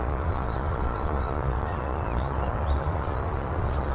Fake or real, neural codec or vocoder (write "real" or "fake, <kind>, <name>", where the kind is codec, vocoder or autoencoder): fake, vocoder, Vocos